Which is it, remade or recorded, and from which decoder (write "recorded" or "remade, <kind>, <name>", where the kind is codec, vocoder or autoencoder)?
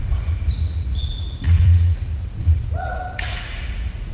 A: remade, vocoder, Vocos